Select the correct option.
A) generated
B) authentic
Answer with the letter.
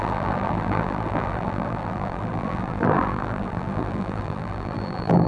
A